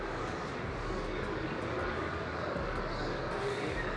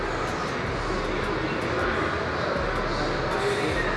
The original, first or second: second